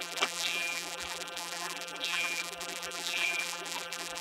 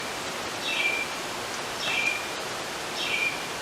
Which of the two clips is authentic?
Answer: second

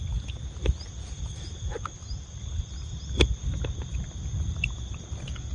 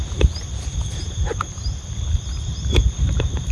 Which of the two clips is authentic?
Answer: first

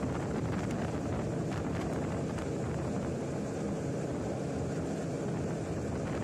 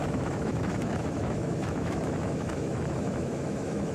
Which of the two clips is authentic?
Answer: first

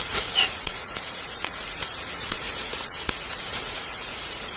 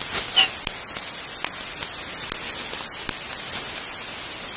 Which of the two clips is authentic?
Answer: second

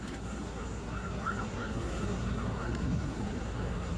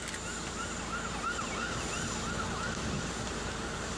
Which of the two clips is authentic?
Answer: second